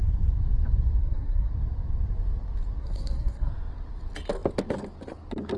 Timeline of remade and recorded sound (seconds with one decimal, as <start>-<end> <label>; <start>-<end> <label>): 0.0-1.0 recorded; 1.0-1.5 remade; 1.5-2.8 recorded; 2.8-3.5 remade; 3.5-5.6 recorded